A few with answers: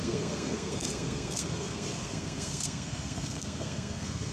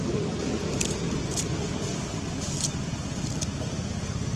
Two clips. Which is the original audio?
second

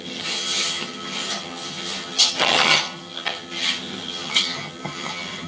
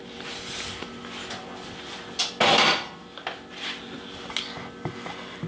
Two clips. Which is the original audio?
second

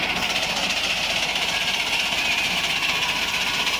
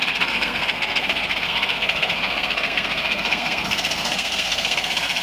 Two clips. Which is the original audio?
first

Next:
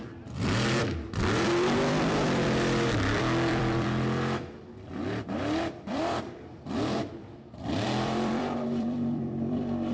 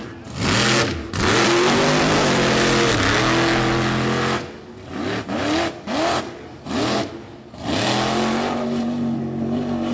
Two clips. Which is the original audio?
second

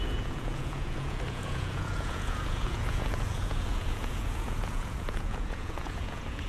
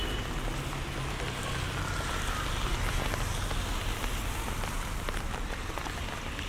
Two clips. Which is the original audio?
second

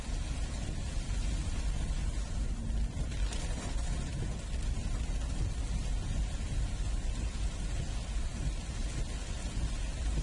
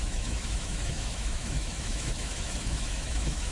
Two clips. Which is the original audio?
first